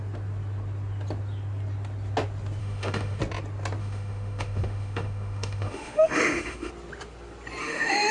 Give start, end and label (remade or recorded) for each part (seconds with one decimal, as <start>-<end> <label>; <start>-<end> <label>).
0.0-2.6 recorded; 2.6-3.2 remade; 3.2-3.8 recorded; 3.8-6.7 remade; 6.7-7.6 recorded; 7.6-8.1 remade